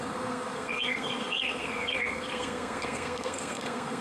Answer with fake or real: fake